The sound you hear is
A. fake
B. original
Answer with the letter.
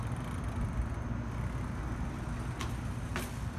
B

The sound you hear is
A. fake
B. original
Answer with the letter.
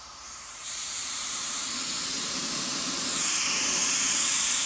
A